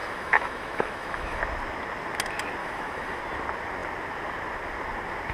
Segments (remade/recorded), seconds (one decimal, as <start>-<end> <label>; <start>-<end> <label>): 0.0-1.4 remade; 1.4-2.6 recorded; 2.6-3.2 remade; 3.2-5.3 recorded